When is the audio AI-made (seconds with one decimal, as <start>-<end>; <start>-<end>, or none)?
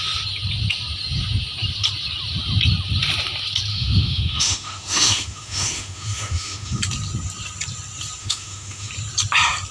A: 3.7-6.8; 8.2-8.9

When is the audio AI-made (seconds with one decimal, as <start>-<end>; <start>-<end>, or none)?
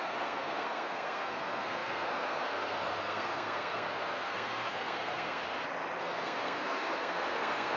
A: 0.0-5.4; 6.0-7.8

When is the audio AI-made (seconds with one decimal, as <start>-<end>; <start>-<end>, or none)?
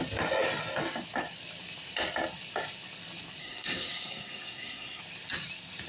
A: 3.4-5.0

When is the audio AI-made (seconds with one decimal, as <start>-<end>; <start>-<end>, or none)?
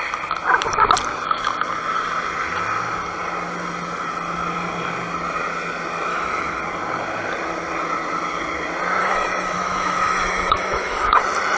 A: 6.1-6.6; 9.0-11.2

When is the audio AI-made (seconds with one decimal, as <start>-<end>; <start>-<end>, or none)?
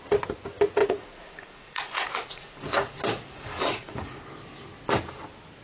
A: 0.8-3.0; 3.6-4.2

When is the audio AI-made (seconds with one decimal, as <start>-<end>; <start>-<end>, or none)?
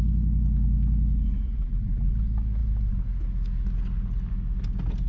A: 1.5-2.1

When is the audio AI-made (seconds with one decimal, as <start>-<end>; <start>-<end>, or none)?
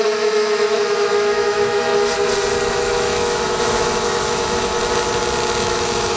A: 0.0-1.9; 2.7-4.7; 5.6-6.2